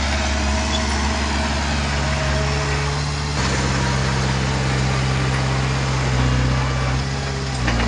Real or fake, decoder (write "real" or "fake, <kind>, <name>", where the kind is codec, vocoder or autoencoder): real